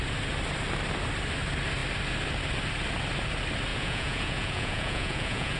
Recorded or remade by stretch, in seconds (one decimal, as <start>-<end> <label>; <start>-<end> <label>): 0.0-3.7 recorded; 3.7-5.6 remade